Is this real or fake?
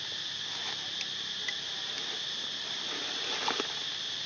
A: real